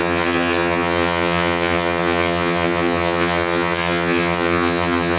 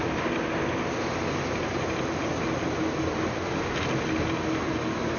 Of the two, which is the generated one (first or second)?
first